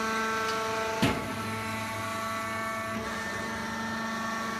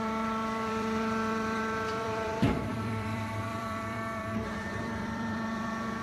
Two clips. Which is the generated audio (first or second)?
second